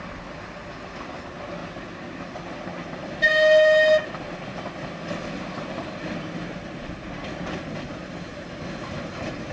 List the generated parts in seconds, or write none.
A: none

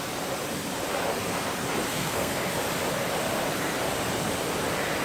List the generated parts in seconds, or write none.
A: 1.9-2.5

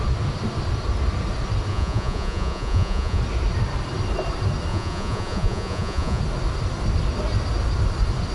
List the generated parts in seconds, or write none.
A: 1.7-3.2; 4.7-6.2

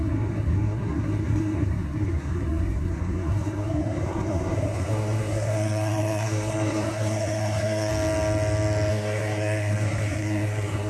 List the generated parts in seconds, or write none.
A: 0.0-7.9; 8.9-10.9

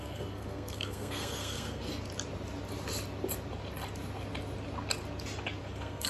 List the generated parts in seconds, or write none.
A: 0.0-1.9; 5.6-6.1